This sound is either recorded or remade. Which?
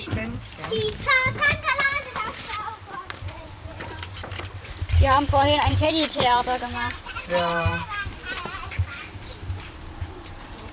remade